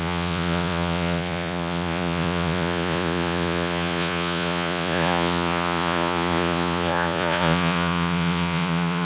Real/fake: fake